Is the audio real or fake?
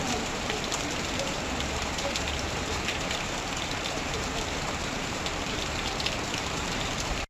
fake